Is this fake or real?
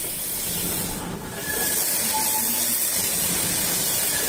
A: real